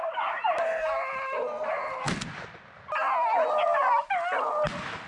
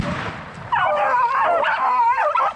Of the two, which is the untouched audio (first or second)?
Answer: first